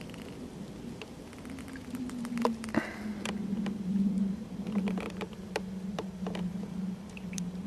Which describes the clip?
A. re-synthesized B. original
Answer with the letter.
B